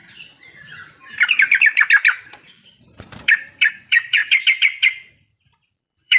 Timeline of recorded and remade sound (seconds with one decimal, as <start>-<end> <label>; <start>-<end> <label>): 0.0-4.2 remade; 4.2-5.8 recorded; 5.8-6.2 remade